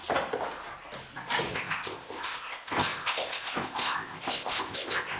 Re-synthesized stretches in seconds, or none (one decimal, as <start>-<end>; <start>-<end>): 1.5-5.2